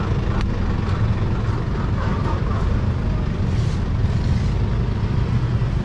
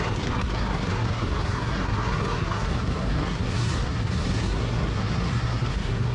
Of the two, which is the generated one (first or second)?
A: second